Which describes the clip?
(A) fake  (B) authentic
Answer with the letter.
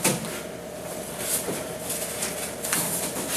B